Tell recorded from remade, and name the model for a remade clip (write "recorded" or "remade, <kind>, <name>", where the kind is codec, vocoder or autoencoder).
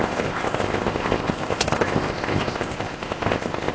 remade, codec, ZipCodec